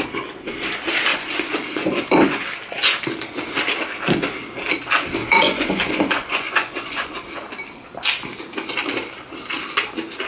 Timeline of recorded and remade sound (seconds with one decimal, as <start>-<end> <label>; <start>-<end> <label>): 0.0-1.1 recorded; 1.1-2.4 remade; 2.4-5.2 recorded; 5.2-7.1 remade; 7.1-10.3 recorded